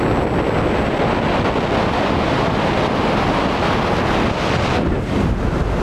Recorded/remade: recorded